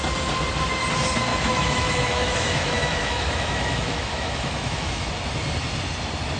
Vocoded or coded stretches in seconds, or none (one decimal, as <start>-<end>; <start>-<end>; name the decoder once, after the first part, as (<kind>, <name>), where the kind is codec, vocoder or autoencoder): 1.3-5.1 (autoencoder, DAC-VAE)